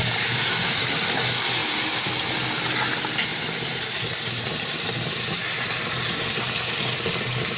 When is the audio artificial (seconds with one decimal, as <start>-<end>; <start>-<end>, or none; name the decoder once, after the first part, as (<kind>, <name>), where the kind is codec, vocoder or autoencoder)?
3.3-6.2 (vocoder, BigVGAN v2)